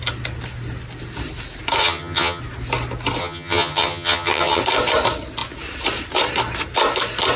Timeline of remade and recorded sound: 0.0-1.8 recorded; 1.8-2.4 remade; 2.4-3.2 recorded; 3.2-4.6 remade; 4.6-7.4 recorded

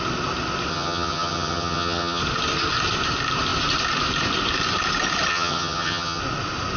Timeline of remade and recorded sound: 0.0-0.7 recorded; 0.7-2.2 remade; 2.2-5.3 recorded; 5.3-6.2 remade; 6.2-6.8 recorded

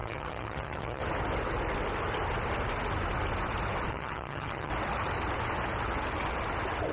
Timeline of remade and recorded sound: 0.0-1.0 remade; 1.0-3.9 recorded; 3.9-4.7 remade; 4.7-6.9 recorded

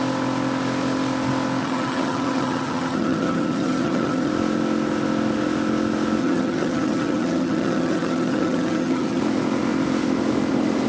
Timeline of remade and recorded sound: 0.0-1.6 recorded; 1.6-4.3 remade; 4.3-6.2 recorded; 6.2-9.2 remade; 9.2-10.9 recorded

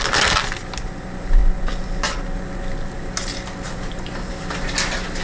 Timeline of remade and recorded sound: 0.0-5.2 recorded

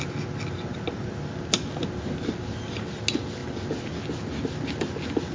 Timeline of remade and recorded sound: 0.0-5.3 recorded

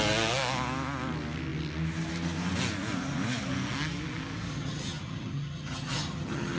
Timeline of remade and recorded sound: 0.0-4.5 recorded; 4.5-6.6 remade

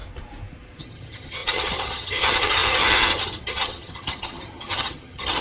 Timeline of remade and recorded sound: 0.0-0.8 recorded; 0.8-5.4 remade